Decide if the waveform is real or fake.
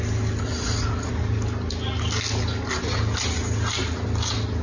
real